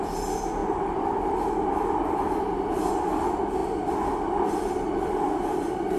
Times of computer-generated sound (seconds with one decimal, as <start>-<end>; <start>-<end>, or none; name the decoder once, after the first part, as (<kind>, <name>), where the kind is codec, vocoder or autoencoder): none